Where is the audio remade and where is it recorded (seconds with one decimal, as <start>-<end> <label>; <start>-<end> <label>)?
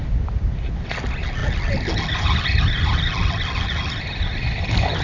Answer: 0.0-5.0 recorded